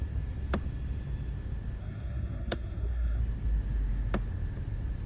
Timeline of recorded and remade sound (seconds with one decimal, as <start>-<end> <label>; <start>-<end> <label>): 0.0-1.8 recorded; 1.8-3.2 remade; 3.2-5.1 recorded